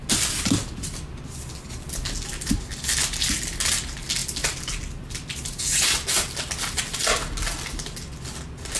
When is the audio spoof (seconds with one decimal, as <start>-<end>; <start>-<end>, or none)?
none